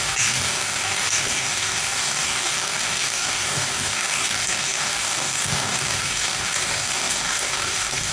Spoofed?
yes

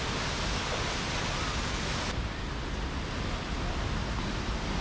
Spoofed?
no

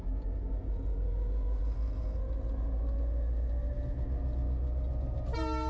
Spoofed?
no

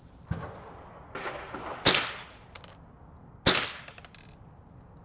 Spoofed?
no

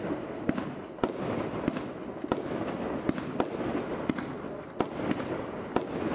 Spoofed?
no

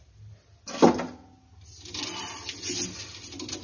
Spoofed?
no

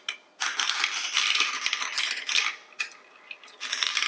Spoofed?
no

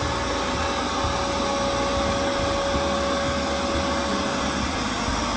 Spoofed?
no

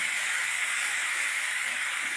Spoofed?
yes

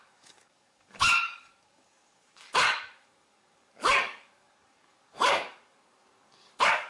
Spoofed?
yes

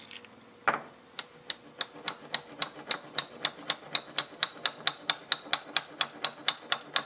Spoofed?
no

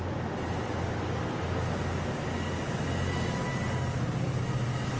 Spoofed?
no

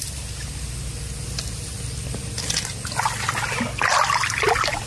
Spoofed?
no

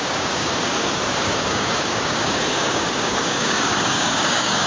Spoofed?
yes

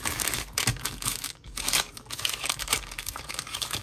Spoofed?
yes